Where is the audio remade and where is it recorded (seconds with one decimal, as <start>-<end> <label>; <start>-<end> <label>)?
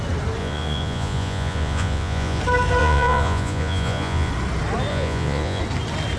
0.0-0.4 recorded; 0.4-2.4 remade; 2.4-2.8 recorded; 2.8-4.3 remade; 4.3-4.9 recorded; 4.9-5.6 remade; 5.6-6.2 recorded